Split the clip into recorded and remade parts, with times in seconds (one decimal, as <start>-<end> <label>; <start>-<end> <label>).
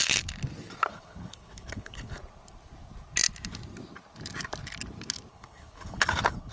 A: 0.0-0.9 recorded; 0.9-2.2 remade; 2.2-5.3 recorded; 5.3-6.5 remade